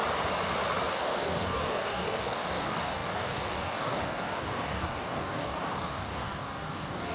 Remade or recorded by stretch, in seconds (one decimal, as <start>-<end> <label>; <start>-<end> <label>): 0.0-0.9 recorded; 0.9-7.1 remade